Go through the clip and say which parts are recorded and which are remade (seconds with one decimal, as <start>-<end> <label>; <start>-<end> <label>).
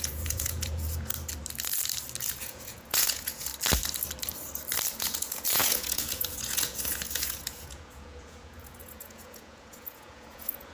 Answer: 0.0-1.1 remade; 1.1-2.4 recorded; 2.4-3.5 remade; 3.5-4.9 recorded; 4.9-10.7 remade